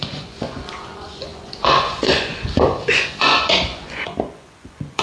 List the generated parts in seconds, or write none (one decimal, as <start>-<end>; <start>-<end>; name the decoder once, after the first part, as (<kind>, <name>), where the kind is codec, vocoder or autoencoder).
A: 0.0-5.0 (vocoder, Vocos)